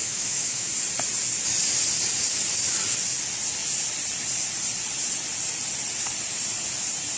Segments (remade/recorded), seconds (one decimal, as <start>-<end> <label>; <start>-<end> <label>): 0.0-0.7 remade; 0.7-7.2 recorded